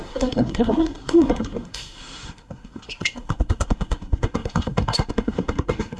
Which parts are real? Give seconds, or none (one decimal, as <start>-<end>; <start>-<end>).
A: none